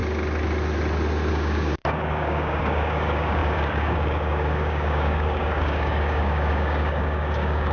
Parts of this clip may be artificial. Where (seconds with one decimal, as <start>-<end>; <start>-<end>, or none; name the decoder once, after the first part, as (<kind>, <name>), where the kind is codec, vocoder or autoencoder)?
1.3-7.7 (codec, DAC)

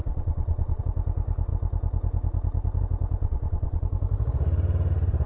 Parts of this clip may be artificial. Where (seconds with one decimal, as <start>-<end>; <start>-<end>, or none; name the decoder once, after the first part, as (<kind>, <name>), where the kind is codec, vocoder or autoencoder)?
0.0-0.8 (vocoder, WaveNeXt); 3.2-3.8

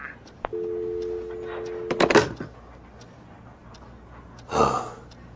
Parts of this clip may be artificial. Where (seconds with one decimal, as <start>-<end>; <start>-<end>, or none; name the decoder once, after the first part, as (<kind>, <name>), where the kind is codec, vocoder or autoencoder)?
none

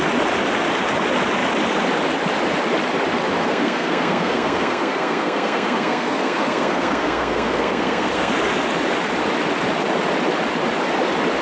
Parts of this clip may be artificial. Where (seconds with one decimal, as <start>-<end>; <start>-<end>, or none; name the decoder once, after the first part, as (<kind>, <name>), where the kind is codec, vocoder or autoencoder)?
3.4-8.3 (codec, SNAC)

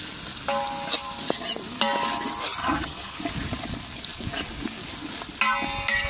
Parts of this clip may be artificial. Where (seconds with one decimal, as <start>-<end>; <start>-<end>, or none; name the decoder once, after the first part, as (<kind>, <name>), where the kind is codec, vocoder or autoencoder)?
2.6-3.2 (vocoder, HiFi-GAN)

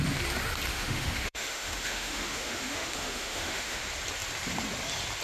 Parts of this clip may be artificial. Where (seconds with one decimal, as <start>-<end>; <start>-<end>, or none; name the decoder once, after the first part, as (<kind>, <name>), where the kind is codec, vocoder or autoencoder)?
0.7-3.8 (autoencoder, DAC-VAE)